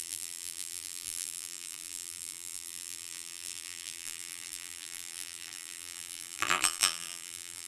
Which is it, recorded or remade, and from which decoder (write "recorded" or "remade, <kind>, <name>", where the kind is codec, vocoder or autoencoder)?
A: remade, vocoder, BigVGAN v2